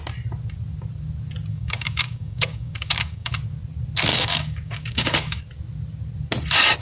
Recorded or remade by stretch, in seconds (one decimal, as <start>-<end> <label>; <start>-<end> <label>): 0.0-1.5 recorded; 1.5-3.4 remade; 3.4-4.1 recorded; 4.1-5.4 remade; 5.4-6.8 recorded

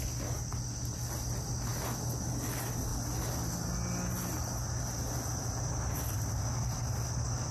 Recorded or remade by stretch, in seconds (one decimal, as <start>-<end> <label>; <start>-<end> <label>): 0.0-7.5 recorded

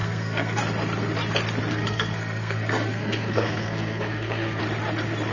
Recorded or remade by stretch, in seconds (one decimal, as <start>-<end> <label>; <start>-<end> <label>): 0.0-0.6 remade; 0.6-1.7 recorded; 1.7-4.6 remade; 4.6-5.3 recorded

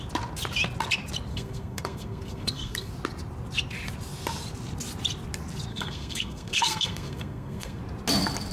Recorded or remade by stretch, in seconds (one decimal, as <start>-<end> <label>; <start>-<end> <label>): 0.0-1.3 recorded; 1.3-2.9 remade; 2.9-5.7 recorded; 5.7-7.8 remade; 7.8-8.5 recorded

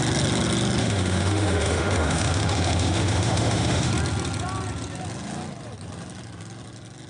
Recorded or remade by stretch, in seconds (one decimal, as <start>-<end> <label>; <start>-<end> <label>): 0.0-0.8 recorded; 0.8-3.9 remade; 3.9-7.1 recorded

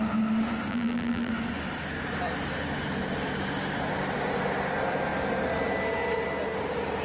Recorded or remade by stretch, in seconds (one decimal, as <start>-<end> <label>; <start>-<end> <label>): 0.0-0.7 recorded; 0.7-1.3 remade; 1.3-7.0 recorded

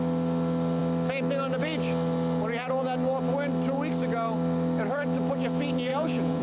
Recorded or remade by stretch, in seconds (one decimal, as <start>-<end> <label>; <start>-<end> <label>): 0.0-5.9 recorded; 5.9-6.4 remade

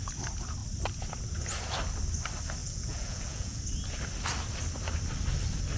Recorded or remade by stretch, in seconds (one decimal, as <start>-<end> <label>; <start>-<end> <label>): 0.0-2.6 recorded; 2.6-3.6 remade; 3.6-5.8 recorded